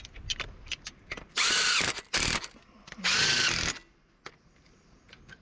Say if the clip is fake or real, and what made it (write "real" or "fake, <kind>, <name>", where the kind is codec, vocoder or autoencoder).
real